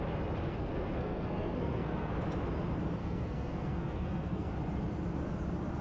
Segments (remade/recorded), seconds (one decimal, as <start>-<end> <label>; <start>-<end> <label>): 0.0-0.5 recorded; 0.5-2.1 remade; 2.1-3.0 recorded; 3.0-4.5 remade; 4.5-5.8 recorded